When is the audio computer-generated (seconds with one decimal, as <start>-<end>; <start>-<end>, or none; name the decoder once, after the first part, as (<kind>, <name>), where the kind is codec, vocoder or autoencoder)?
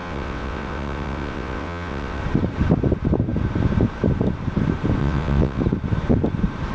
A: 0.0-2.2 (vocoder, WaveNeXt); 5.0-5.6